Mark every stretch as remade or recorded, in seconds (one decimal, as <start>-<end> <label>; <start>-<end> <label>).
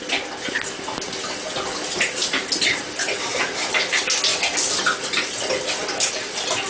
0.0-6.7 recorded